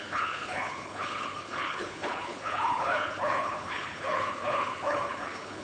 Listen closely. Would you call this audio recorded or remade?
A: remade